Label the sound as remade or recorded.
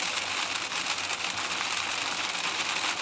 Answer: recorded